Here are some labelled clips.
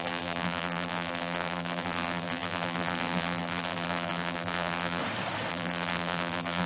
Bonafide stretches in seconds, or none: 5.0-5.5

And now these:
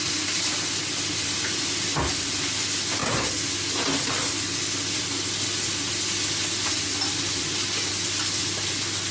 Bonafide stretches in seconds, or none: 0.0-9.1

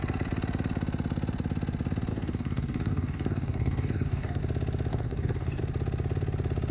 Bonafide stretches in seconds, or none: 0.0-2.1; 4.4-4.9; 5.6-6.7

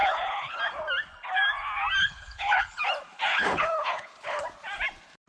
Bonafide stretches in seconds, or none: 0.6-2.0; 2.8-3.3; 4.4-5.3